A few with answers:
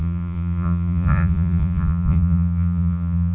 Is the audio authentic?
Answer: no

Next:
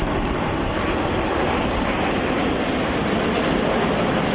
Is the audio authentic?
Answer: yes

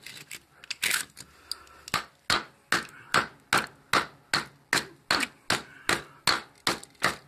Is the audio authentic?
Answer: yes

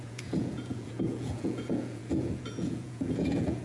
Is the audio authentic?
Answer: no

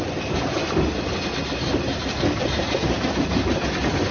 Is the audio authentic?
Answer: yes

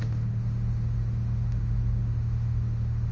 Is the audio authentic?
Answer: no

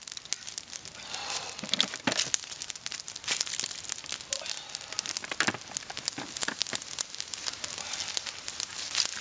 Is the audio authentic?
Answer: yes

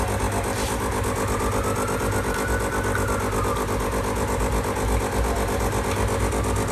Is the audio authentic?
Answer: yes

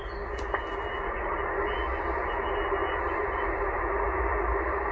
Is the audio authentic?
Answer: yes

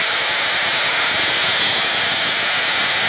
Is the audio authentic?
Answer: yes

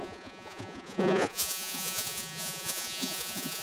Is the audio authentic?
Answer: no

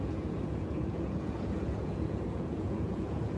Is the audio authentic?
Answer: no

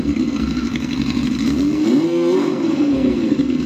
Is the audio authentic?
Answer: no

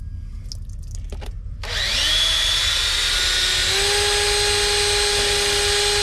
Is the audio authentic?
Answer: yes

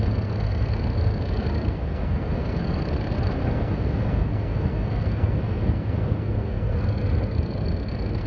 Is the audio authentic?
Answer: no